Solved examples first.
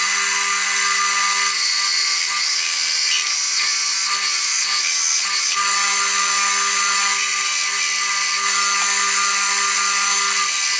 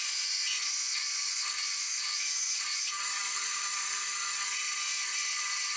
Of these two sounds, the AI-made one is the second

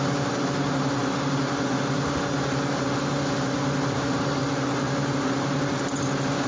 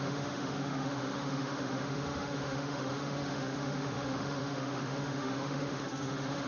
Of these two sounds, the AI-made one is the second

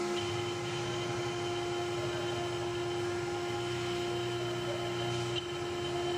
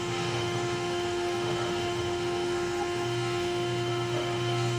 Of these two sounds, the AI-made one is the second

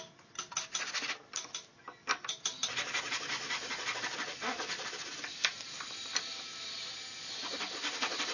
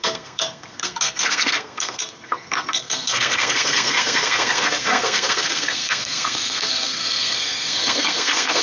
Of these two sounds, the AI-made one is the second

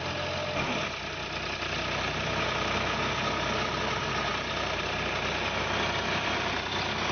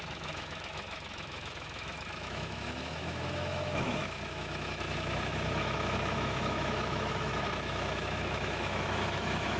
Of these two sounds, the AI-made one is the second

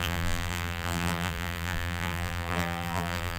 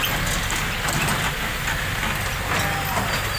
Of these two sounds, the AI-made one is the first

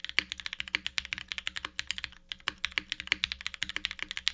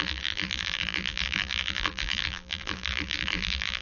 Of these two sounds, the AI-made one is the second